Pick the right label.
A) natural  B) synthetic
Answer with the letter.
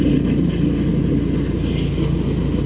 A